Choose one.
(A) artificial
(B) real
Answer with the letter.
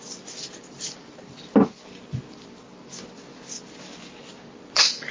B